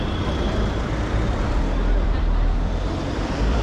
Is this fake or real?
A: fake